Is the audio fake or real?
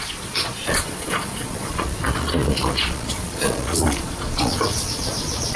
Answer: fake